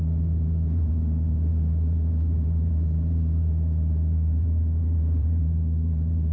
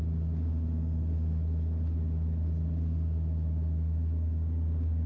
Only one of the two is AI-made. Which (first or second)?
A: first